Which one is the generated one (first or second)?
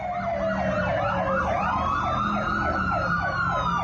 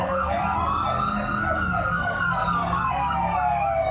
second